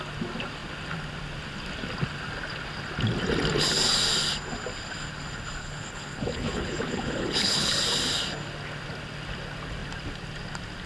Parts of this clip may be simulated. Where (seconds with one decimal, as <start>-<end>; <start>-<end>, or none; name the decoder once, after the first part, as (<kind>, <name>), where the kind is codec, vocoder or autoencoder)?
5.6-7.7 (codec, HILCodec)